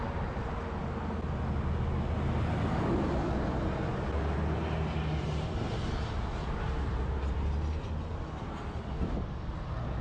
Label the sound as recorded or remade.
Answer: recorded